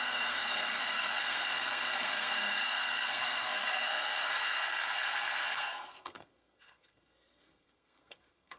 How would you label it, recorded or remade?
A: remade